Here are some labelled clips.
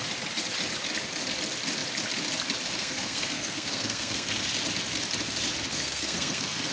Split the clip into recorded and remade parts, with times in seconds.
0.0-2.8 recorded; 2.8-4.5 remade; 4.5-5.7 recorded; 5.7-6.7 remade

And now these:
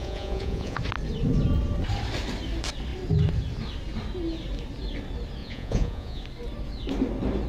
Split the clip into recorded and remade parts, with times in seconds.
0.0-0.8 remade; 0.8-5.4 recorded; 5.4-6.2 remade; 6.2-7.5 recorded

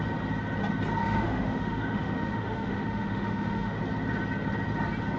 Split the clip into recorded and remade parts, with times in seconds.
0.0-1.0 recorded; 1.0-3.8 remade; 3.8-5.2 recorded

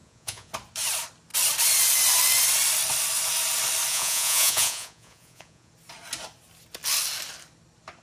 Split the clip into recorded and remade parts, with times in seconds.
0.0-0.5 remade; 0.5-3.9 recorded; 3.9-5.7 remade; 5.7-8.0 recorded

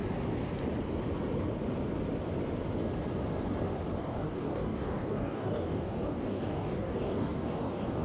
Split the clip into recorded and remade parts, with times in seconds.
0.0-4.0 recorded; 4.0-8.0 remade

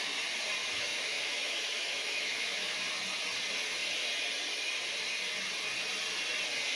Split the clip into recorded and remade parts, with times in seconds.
0.0-0.6 recorded; 0.6-2.8 remade; 2.8-6.8 recorded

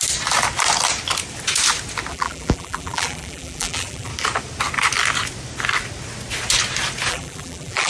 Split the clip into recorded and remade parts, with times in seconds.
0.0-2.1 recorded; 2.1-4.1 remade; 4.1-7.1 recorded; 7.1-7.9 remade

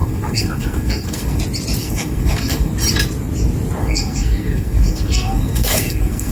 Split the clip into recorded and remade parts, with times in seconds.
0.0-1.4 remade; 1.4-1.8 recorded; 1.8-2.7 remade; 2.7-3.8 recorded; 3.8-6.3 remade